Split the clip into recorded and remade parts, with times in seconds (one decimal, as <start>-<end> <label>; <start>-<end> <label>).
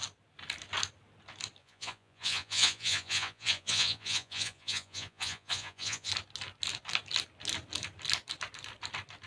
0.0-1.6 recorded; 1.6-6.1 remade; 6.1-9.3 recorded